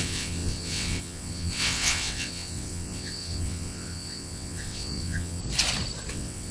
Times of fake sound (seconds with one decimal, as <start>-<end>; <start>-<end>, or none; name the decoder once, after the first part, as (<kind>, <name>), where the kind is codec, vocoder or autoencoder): 0.0-5.4 (vocoder, WaveNeXt); 6.1-6.5